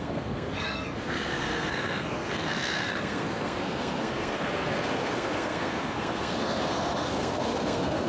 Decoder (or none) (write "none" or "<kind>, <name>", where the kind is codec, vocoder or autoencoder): codec, SNAC